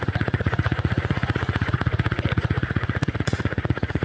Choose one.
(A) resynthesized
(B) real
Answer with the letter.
A